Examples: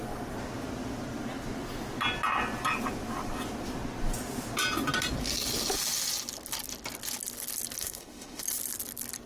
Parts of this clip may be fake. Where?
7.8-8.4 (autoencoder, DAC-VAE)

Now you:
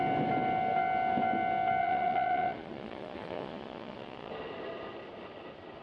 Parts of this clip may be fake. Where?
1.8-4.3 (vocoder, Vocos)

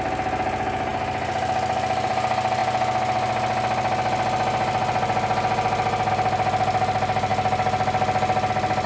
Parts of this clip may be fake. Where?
none